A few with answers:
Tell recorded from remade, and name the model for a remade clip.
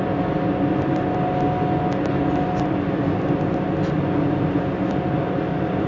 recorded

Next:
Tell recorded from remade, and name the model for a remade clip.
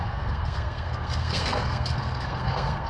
remade, codec, SNAC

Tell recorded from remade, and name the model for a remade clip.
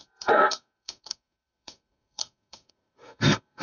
remade, codec, SNAC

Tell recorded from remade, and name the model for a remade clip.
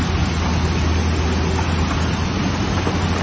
recorded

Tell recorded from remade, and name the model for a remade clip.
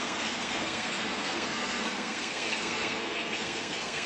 remade, codec, SNAC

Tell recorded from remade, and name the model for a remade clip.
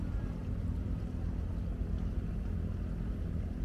recorded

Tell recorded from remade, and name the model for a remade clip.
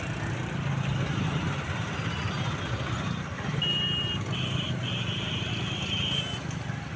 recorded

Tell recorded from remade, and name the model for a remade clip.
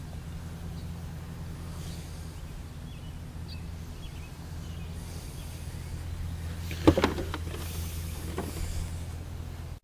recorded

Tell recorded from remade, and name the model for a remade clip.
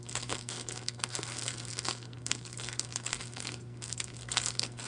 remade, codec, SNAC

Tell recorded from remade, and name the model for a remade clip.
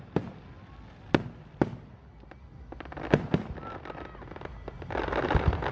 recorded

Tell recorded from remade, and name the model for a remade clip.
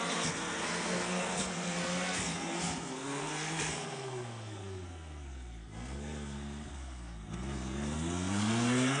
remade, codec, SNAC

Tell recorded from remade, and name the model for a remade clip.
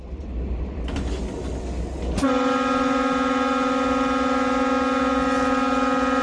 recorded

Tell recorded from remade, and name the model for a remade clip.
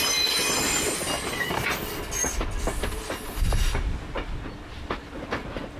recorded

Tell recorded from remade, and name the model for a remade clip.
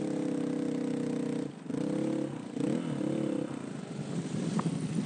recorded